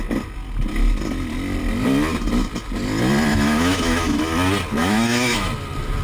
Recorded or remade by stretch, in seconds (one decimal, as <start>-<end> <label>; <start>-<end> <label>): 0.0-3.3 recorded; 3.3-4.2 remade; 4.2-4.8 recorded; 4.8-5.5 remade; 5.5-6.0 recorded